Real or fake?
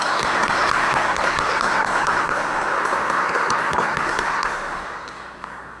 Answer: fake